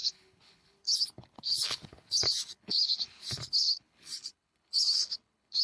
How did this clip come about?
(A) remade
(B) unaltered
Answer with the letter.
A